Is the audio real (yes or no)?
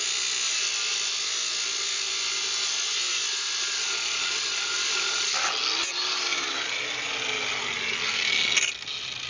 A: yes